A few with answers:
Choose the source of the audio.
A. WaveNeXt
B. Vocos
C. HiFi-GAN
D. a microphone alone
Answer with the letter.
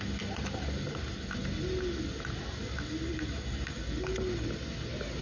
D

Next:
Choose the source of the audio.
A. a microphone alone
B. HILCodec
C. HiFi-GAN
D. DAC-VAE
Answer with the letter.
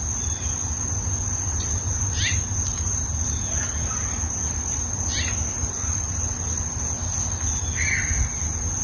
A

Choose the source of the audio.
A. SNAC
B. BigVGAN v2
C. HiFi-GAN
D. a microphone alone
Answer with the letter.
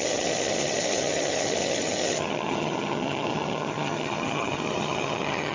C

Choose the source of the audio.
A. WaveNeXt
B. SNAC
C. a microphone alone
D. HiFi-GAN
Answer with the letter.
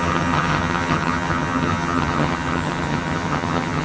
D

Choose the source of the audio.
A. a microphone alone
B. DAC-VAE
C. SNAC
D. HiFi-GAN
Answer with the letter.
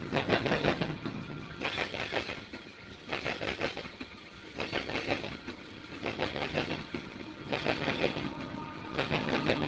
D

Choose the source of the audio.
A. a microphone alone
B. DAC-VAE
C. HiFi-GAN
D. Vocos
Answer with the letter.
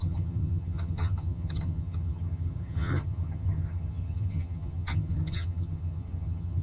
C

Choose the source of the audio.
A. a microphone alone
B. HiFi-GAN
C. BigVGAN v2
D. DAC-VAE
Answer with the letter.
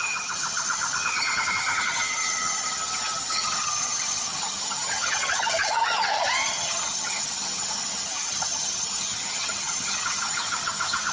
B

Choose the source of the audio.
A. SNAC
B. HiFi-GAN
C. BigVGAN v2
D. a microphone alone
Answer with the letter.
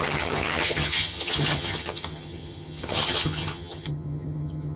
B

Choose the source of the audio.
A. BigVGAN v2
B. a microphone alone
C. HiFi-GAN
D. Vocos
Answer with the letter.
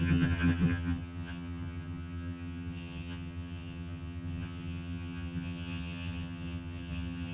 C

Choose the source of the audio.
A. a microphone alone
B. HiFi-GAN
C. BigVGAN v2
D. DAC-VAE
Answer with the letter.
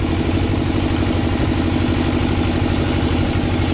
A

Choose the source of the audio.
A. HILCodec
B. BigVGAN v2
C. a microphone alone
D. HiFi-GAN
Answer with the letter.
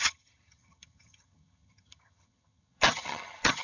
D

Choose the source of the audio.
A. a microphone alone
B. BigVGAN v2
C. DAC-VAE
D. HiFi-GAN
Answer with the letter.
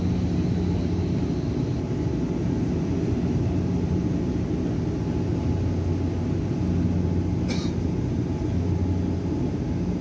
A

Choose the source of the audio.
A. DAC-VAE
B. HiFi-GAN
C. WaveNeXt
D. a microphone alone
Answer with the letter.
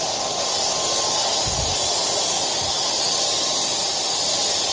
D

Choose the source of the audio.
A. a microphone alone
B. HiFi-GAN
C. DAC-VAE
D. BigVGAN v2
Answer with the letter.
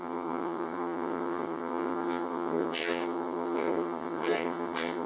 B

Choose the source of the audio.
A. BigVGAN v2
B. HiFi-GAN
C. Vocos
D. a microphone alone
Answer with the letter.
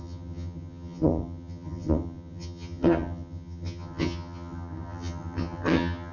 B